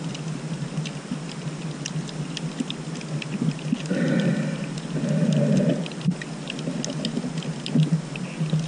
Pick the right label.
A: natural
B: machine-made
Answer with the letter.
A